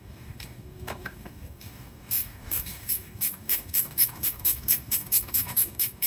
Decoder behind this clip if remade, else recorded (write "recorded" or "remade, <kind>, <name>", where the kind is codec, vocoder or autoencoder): remade, codec, DAC